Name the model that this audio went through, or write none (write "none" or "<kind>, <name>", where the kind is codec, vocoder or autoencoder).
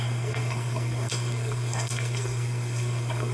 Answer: codec, SNAC